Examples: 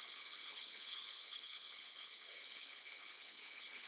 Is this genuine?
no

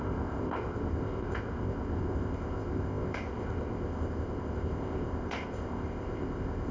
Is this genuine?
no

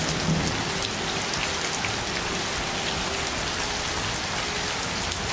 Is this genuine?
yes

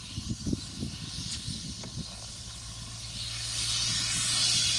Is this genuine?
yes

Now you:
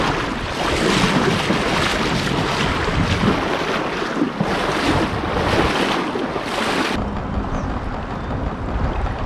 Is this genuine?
yes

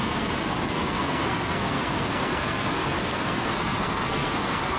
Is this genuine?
no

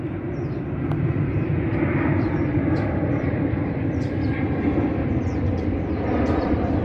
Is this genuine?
no